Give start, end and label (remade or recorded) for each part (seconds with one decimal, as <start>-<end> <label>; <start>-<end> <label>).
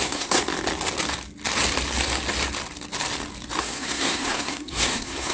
0.0-0.4 remade; 0.4-3.6 recorded; 3.6-5.3 remade